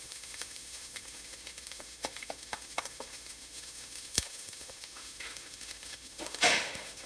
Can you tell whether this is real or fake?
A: fake